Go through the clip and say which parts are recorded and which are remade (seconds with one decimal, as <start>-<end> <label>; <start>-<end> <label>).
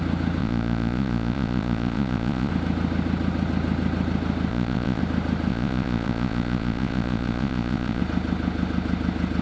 0.0-0.4 recorded; 0.4-2.5 remade; 2.5-4.5 recorded; 4.5-5.0 remade; 5.0-5.5 recorded; 5.5-8.0 remade; 8.0-9.4 recorded